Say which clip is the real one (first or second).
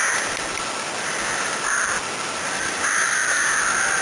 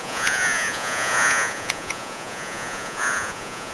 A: first